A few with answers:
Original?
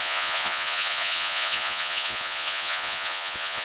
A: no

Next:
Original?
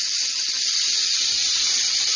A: yes